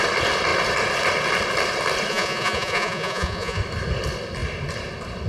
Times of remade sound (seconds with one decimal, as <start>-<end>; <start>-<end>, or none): 2.1-3.6

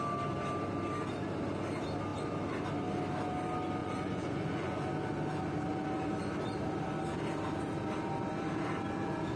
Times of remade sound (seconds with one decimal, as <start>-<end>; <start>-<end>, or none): 3.8-4.9

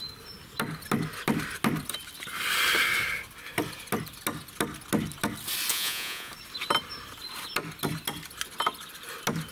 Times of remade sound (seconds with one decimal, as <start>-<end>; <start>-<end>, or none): 5.7-6.3

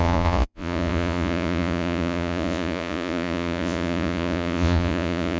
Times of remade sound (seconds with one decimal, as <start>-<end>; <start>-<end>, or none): 0.0-5.4

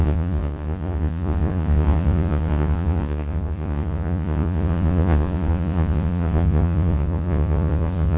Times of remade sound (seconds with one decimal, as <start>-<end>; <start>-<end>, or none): 0.0-8.2